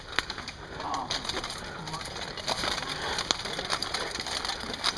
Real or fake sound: real